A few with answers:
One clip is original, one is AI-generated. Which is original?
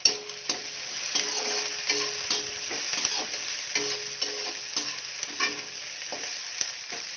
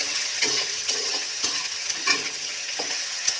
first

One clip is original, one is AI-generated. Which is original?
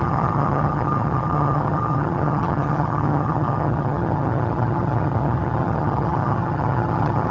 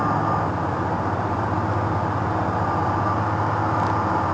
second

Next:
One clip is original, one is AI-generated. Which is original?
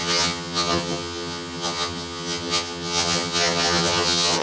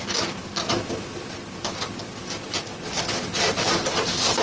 second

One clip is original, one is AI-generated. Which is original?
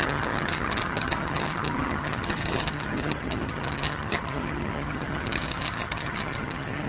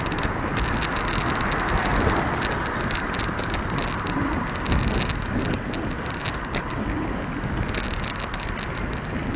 second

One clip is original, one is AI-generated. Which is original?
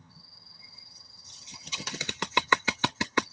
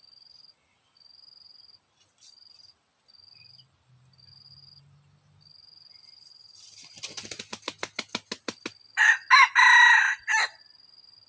second